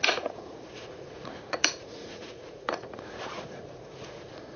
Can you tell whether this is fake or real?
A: fake